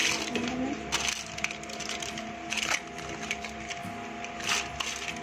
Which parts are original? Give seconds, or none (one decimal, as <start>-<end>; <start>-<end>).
0.0-5.2

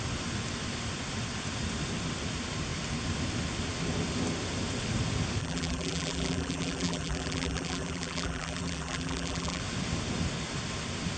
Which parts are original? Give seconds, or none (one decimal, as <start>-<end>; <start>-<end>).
0.0-5.4; 9.6-11.2

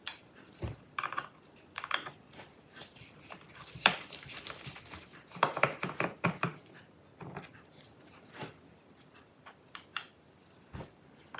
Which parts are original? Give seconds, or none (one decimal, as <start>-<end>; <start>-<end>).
6.5-7.3

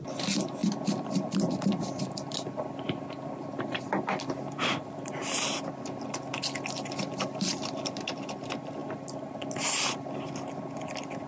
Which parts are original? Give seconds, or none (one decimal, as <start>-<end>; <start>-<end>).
0.0-0.6; 5.3-11.3

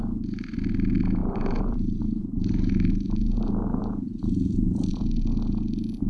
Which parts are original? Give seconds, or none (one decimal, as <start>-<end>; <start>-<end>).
0.0-1.2; 4.9-6.1

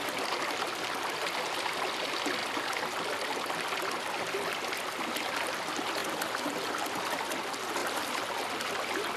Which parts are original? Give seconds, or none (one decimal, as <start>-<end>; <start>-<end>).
0.0-9.2